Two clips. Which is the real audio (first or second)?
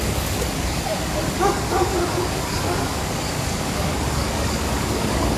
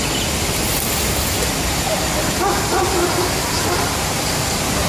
second